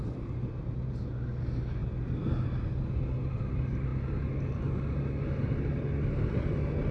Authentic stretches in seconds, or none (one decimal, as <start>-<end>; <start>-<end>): 0.0-6.9